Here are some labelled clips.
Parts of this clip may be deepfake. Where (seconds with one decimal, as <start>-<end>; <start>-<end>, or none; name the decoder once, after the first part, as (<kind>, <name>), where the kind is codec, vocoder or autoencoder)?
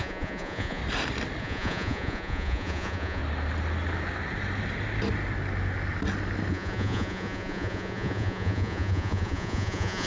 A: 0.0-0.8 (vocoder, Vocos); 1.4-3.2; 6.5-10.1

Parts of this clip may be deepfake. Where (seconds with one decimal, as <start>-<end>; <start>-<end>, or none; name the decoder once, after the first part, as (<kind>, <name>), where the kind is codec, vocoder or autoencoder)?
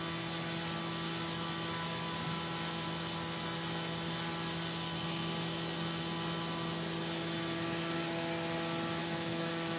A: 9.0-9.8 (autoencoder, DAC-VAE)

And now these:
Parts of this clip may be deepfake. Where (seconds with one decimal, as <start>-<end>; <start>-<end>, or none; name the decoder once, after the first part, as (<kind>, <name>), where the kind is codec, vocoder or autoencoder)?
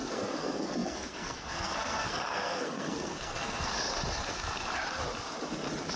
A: 0.0-3.7 (codec, SNAC)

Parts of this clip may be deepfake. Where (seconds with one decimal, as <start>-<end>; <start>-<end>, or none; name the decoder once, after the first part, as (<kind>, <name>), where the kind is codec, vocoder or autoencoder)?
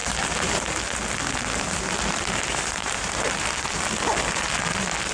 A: 2.8-3.9 (vocoder, BigVGAN v2)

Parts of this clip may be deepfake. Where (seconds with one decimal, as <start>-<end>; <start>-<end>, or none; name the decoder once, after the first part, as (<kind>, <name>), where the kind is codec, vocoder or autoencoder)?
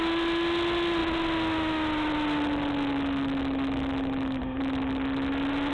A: none